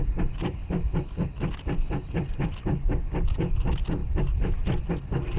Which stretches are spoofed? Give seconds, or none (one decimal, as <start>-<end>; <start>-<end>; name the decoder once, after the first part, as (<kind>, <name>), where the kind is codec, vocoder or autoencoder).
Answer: none